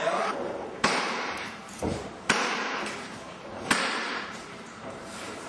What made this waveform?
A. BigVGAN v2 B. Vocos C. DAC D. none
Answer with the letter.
A